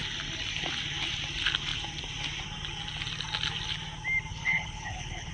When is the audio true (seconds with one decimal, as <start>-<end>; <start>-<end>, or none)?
0.0-4.3